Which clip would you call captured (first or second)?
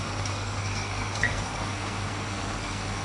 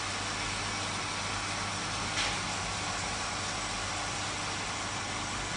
second